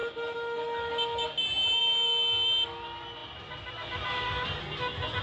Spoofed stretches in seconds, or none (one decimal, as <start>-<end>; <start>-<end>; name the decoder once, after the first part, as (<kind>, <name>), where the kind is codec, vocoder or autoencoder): 3.2-4.6 (vocoder, BigVGAN v2)